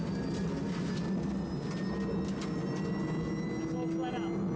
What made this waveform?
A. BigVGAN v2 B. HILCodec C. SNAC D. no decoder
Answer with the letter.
D